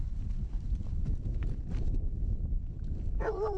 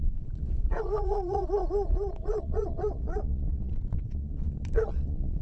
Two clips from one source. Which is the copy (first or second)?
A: second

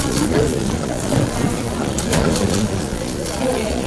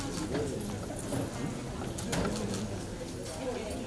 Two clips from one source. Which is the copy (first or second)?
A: first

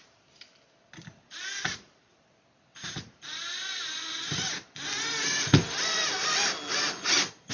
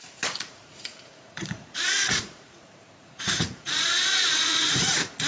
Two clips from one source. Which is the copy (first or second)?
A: second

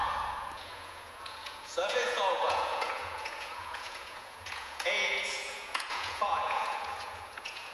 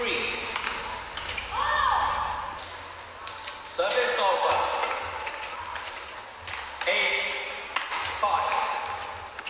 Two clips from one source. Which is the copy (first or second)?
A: first